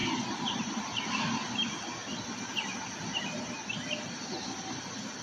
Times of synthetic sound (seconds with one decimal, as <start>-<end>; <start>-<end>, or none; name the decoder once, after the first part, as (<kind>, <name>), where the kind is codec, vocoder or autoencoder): none